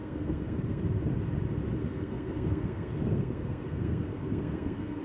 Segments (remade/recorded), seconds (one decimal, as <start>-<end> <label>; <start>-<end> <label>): 0.0-0.8 remade; 0.8-1.8 recorded; 1.8-5.0 remade

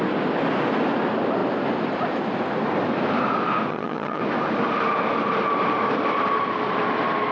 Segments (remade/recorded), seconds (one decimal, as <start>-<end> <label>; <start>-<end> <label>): 0.0-3.7 recorded; 3.7-4.2 remade; 4.2-7.3 recorded

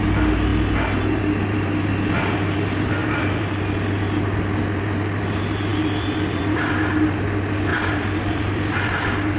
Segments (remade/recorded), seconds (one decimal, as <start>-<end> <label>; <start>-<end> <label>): 0.0-3.0 recorded; 3.0-3.5 remade; 3.5-5.7 recorded; 5.7-6.7 remade; 6.7-7.7 recorded; 7.7-9.4 remade